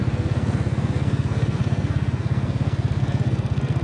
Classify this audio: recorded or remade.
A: remade